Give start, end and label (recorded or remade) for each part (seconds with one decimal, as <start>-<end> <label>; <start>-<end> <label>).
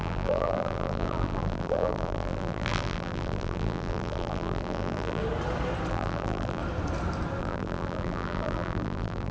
0.0-5.2 remade; 5.2-5.9 recorded; 5.9-6.6 remade; 6.6-7.4 recorded; 7.4-9.3 remade